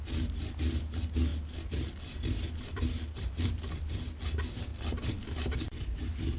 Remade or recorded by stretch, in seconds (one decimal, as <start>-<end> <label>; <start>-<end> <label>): 0.0-6.4 recorded